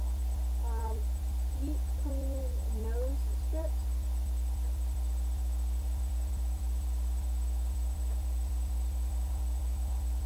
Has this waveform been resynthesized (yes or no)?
yes